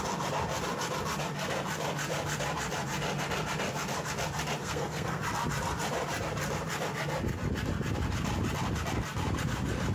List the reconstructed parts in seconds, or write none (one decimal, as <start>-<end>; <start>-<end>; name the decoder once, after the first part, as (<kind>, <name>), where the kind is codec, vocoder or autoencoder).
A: 4.6-5.2 (codec, SNAC)